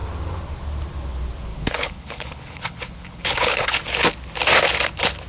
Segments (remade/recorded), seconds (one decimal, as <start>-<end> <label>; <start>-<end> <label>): 0.0-1.5 recorded; 1.5-3.7 remade; 3.7-5.3 recorded